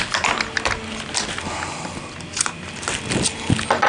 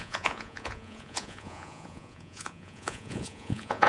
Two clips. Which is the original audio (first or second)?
first